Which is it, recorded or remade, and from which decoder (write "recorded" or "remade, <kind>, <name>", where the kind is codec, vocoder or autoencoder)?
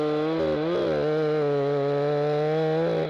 recorded